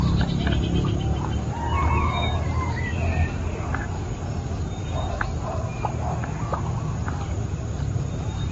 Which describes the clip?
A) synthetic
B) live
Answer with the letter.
B